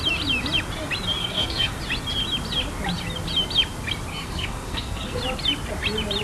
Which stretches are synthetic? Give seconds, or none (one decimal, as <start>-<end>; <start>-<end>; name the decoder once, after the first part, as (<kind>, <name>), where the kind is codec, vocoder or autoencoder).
1.2-1.8 (codec, SNAC); 4.1-5.2